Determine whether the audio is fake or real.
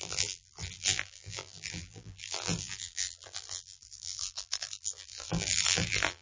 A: fake